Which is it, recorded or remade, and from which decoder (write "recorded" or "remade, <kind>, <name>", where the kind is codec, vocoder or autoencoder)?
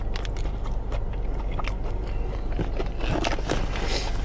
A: recorded